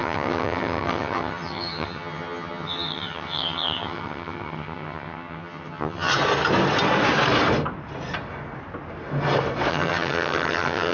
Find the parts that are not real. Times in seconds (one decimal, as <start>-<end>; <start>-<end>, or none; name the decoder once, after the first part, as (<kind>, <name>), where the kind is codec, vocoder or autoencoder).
0.0-6.1 (vocoder, HiFi-GAN); 9.7-10.9